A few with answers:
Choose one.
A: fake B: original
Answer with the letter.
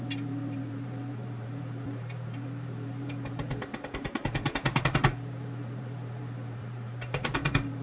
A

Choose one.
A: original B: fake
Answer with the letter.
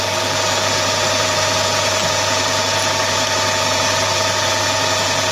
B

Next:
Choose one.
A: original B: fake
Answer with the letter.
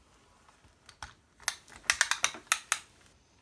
A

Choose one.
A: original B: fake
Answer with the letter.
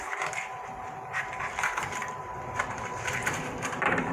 B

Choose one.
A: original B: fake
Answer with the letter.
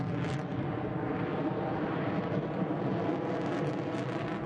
A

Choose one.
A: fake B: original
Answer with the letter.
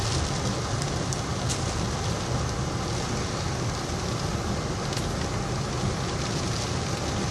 B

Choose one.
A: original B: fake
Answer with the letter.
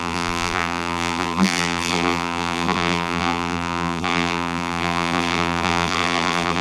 B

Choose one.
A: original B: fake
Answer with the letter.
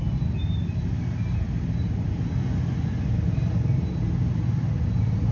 A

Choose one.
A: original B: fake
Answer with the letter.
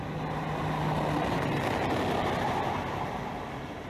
A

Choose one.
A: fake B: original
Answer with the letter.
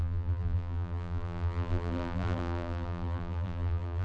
A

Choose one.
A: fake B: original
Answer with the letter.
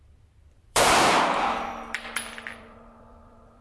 A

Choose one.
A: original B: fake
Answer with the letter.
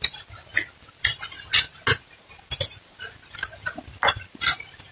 A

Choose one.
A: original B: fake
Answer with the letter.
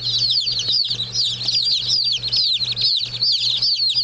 A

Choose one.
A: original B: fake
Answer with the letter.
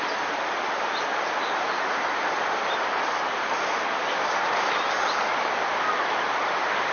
B